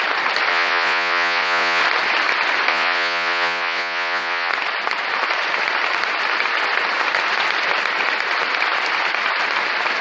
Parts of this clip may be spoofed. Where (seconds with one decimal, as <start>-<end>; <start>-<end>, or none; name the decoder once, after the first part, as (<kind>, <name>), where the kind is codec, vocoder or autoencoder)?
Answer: 0.5-1.8 (vocoder, Vocos); 2.7-4.5